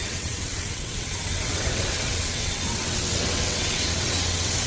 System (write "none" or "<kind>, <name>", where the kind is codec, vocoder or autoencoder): vocoder, WaveNeXt